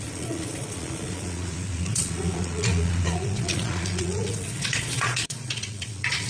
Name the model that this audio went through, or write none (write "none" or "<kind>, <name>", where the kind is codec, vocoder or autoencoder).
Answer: vocoder, Vocos